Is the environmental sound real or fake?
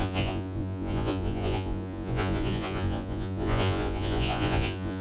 fake